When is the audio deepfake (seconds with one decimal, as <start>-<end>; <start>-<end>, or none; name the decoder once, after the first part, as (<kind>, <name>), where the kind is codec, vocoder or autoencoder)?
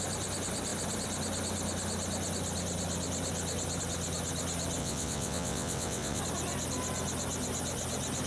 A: 4.8-6.2 (vocoder, WaveNeXt)